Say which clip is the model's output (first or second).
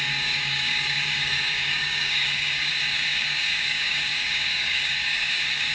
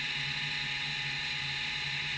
first